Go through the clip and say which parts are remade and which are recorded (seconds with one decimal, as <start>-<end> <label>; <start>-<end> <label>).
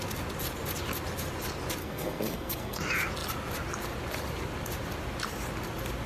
0.0-1.8 recorded; 1.8-2.8 remade; 2.8-6.1 recorded